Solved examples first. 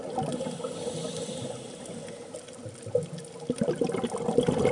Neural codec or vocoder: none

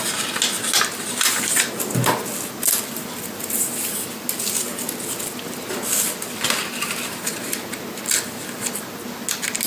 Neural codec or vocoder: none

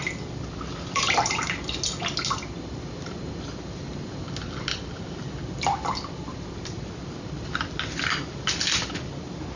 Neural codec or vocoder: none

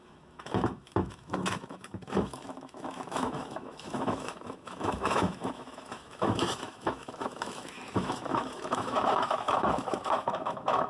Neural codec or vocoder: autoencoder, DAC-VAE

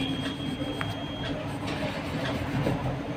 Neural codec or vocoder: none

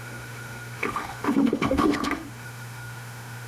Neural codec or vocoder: autoencoder, DAC-VAE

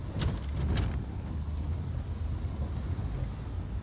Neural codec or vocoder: none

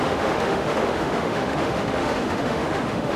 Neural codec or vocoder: autoencoder, DAC-VAE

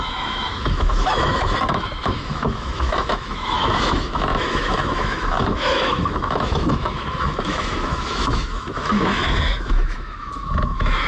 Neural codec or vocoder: autoencoder, DAC-VAE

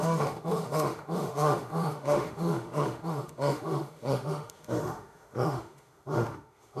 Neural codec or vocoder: autoencoder, DAC-VAE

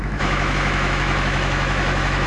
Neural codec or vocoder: autoencoder, DAC-VAE